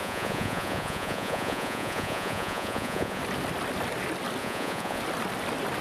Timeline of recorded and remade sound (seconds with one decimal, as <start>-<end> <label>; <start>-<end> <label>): 0.0-3.2 remade; 3.2-4.4 recorded; 4.4-5.0 remade; 5.0-5.8 recorded